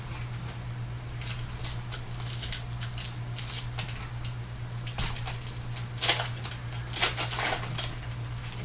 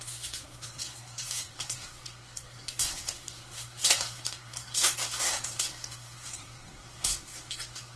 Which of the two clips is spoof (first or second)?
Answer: second